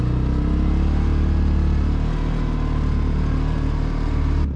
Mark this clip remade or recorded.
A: recorded